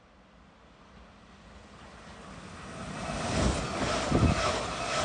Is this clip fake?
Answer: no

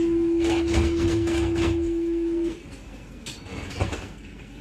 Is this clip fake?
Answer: yes